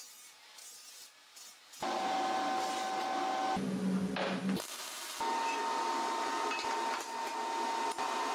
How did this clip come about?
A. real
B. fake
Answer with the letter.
A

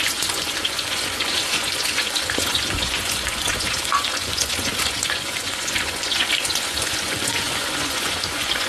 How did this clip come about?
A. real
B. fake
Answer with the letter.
B